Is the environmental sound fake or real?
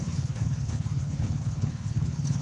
fake